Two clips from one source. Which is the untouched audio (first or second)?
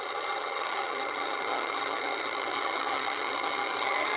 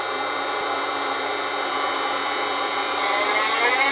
second